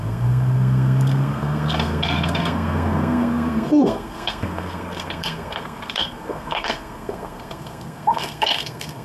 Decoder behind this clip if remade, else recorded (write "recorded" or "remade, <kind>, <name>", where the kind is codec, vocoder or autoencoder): remade, codec, SNAC